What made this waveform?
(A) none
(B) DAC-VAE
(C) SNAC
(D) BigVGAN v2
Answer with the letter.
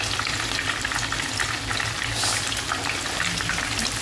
A